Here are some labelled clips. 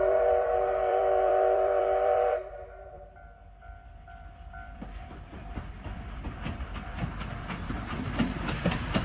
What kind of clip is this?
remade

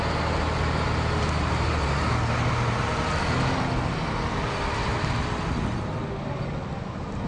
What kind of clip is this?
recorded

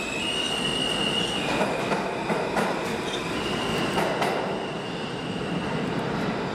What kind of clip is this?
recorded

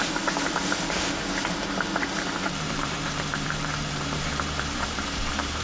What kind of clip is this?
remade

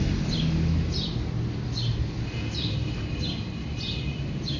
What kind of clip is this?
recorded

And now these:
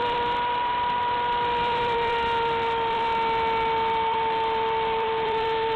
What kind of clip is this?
remade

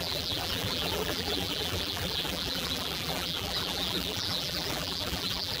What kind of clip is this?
remade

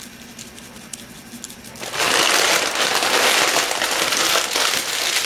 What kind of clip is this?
recorded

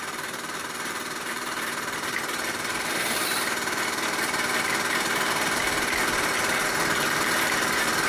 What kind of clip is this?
remade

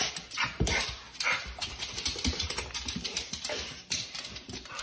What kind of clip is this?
remade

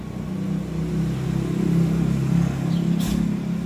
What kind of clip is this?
recorded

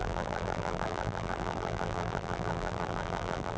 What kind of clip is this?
remade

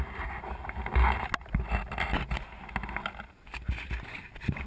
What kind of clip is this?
recorded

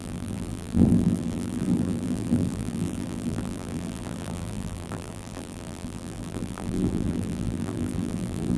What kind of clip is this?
remade